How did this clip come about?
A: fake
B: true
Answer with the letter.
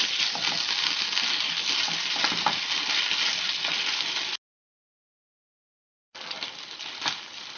B